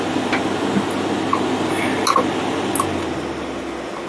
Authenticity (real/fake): real